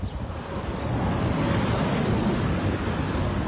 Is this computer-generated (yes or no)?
no